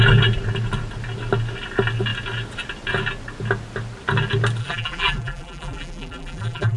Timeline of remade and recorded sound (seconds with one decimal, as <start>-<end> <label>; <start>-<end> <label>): 0.0-4.6 recorded; 4.6-6.8 remade